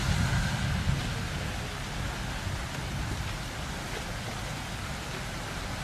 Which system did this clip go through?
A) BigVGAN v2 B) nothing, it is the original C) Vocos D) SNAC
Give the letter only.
B